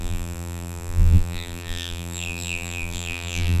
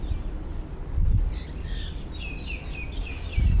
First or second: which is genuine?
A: second